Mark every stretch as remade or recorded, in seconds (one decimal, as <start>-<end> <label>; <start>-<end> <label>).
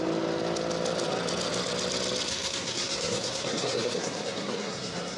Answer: 0.0-2.3 recorded; 2.3-5.2 remade